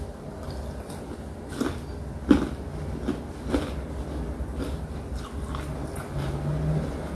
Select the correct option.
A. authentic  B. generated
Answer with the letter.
A